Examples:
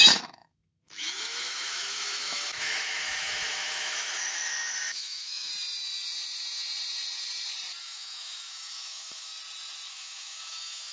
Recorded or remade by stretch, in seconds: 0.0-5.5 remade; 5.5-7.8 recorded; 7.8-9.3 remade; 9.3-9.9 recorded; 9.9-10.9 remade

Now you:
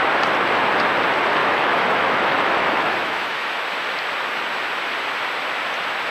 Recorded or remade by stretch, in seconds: 0.0-1.4 recorded; 1.4-3.5 remade; 3.5-6.1 recorded